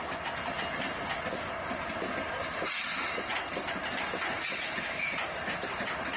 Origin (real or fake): real